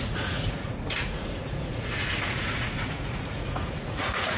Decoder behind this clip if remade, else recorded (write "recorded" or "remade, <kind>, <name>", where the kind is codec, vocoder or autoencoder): remade, vocoder, Vocos